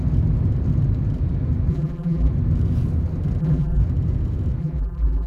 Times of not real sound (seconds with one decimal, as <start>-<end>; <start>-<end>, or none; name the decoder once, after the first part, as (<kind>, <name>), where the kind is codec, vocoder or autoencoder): 1.7-2.3 (vocoder, BigVGAN v2); 3.4-3.8; 4.6-5.3